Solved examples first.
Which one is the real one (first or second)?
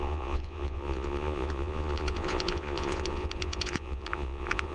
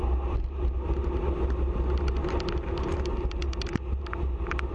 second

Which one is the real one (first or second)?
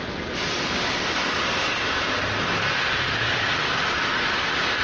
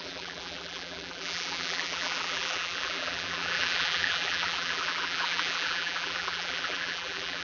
first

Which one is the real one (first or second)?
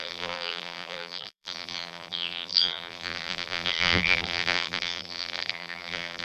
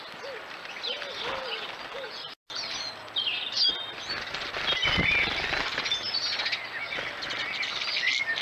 second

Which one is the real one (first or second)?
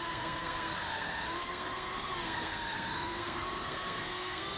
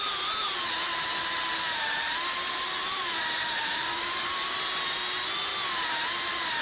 second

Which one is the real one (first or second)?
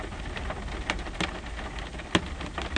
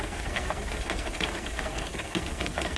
first